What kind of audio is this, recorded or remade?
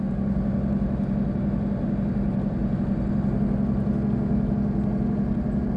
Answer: recorded